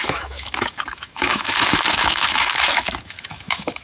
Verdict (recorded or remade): remade